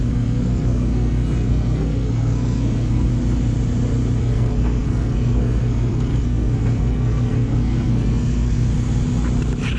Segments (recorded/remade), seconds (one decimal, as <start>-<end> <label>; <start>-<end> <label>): 0.0-3.1 remade; 3.1-4.2 recorded; 4.2-8.7 remade; 8.7-9.8 recorded